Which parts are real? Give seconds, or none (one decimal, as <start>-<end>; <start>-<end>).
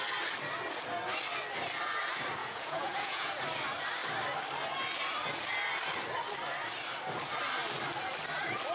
0.0-2.4; 3.4-8.7